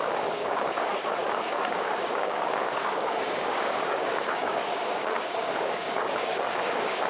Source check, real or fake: fake